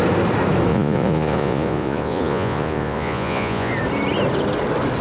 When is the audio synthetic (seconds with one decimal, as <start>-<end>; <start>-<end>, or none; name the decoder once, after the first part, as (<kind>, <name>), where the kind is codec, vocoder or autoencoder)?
0.7-3.7 (vocoder, Vocos)